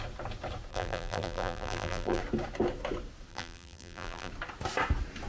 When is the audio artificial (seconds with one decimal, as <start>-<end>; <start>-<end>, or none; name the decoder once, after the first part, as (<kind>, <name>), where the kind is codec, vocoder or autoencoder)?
0.7-2.2 (vocoder, BigVGAN v2); 3.3-4.3